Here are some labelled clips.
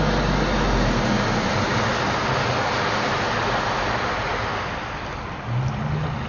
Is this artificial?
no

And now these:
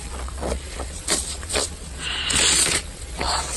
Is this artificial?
yes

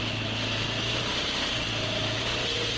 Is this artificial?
no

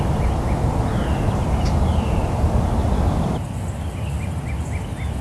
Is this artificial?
no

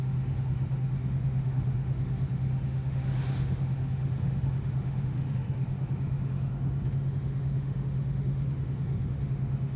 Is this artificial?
yes